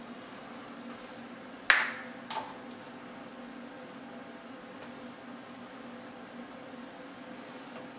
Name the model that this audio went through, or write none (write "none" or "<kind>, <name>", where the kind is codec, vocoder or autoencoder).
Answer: none